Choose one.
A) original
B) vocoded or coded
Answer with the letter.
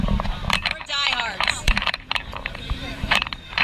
B